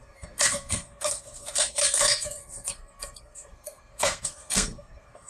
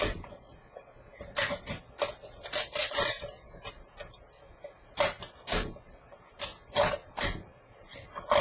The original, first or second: second